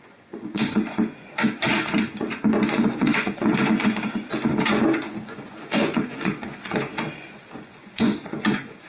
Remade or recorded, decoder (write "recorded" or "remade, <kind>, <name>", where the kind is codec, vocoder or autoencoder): remade, vocoder, Vocos